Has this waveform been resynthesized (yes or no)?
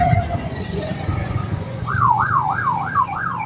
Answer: yes